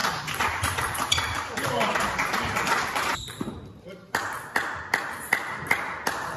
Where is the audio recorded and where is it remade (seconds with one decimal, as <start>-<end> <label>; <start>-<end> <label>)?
0.0-3.5 remade; 3.5-6.4 recorded